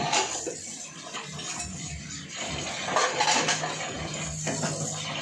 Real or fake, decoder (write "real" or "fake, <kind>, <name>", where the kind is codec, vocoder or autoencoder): real